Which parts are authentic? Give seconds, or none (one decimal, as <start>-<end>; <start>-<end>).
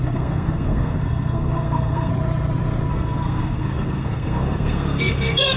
2.1-2.9